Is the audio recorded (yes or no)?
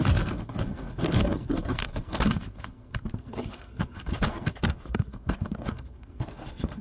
no